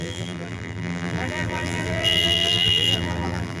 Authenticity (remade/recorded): remade